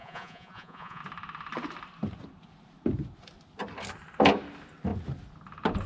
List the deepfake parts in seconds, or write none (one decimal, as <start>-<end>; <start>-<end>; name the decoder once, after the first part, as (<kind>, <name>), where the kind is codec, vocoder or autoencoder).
0.0-1.0 (vocoder, Vocos)